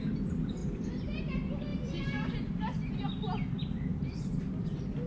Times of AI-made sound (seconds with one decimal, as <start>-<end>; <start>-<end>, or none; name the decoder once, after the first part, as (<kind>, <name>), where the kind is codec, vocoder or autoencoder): 1.7-3.0 (vocoder, BigVGAN v2); 3.9-4.4